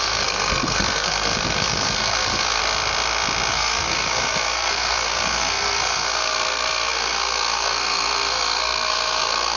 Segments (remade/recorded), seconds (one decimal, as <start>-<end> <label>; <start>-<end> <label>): 0.0-2.6 remade; 2.6-3.5 recorded; 3.5-9.6 remade